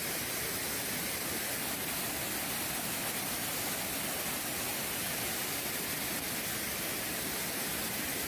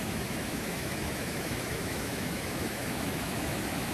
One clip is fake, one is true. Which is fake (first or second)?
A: second